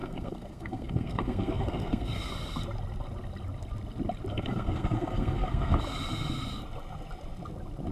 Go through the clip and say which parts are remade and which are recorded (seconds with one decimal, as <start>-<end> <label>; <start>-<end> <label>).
0.0-2.3 remade; 2.3-4.3 recorded; 4.3-5.8 remade; 5.8-7.9 recorded